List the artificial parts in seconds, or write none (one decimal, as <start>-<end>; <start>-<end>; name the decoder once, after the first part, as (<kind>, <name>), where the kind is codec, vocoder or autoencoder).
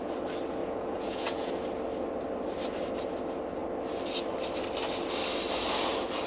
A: 0.6-1.5 (vocoder, Vocos)